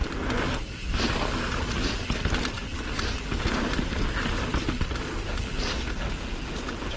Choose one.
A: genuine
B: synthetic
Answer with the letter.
A